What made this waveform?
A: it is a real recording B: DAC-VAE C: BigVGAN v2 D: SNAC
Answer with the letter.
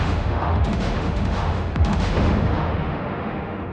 B